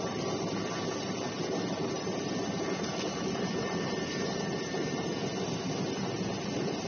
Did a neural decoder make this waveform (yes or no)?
yes